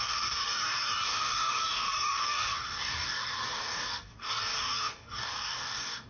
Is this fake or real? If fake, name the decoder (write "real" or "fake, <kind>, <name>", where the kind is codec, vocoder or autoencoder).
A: fake, codec, DAC